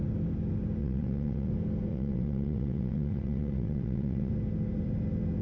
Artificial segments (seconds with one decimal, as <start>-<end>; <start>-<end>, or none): 0.8-1.5; 1.9-4.3